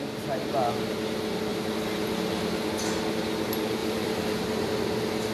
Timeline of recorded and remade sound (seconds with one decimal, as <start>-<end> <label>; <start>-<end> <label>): 0.0-1.5 recorded; 1.5-2.7 remade; 2.7-3.8 recorded; 3.8-4.4 remade; 4.4-5.3 recorded